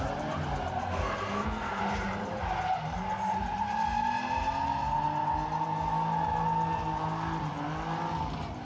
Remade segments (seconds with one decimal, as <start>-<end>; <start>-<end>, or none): 0.8-1.8